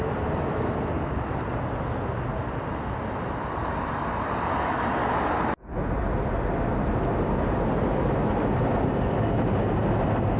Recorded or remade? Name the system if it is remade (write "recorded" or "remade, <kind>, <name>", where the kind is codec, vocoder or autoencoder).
recorded